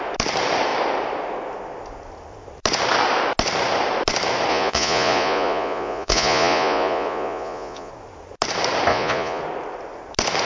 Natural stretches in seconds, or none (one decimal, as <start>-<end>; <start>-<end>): 0.0-4.5; 7.9-8.9; 9.4-10.4